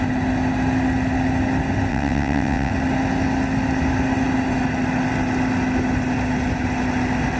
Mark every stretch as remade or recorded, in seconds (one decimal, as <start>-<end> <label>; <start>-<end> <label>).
0.0-1.9 recorded; 1.9-2.7 remade; 2.7-7.4 recorded